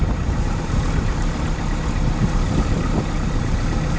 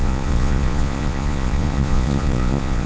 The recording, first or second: first